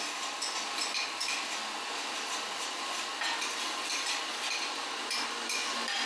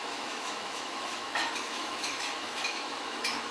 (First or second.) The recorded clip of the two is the first